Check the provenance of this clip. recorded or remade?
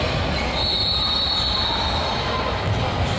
recorded